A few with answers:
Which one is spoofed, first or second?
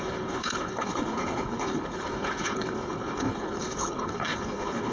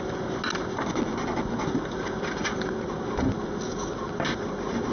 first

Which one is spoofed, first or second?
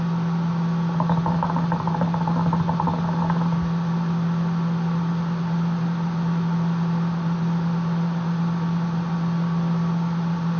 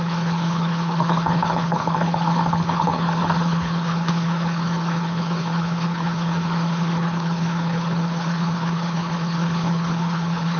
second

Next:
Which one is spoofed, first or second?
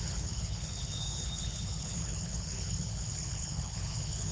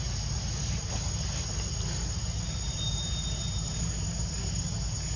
first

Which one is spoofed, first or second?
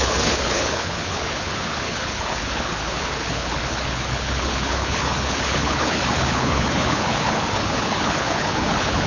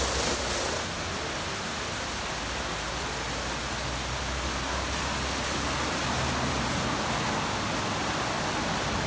first